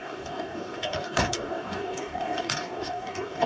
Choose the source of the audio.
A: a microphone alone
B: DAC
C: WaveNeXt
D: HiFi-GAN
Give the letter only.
B